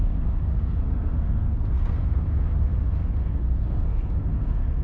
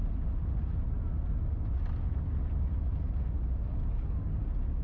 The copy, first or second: first